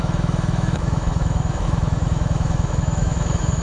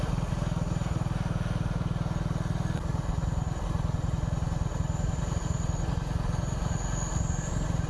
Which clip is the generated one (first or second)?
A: first